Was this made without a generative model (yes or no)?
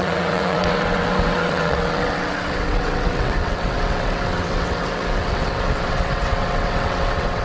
no